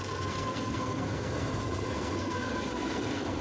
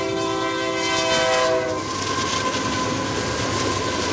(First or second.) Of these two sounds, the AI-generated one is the first